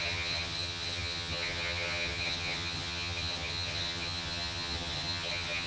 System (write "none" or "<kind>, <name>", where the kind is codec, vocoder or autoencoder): vocoder, HiFi-GAN